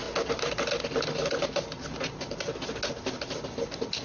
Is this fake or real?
real